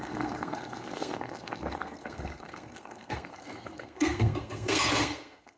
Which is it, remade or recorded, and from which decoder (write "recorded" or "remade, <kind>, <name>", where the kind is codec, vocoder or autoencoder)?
remade, codec, SNAC